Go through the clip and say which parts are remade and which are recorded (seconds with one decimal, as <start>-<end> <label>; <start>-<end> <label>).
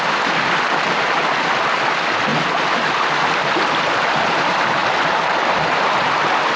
0.0-6.6 recorded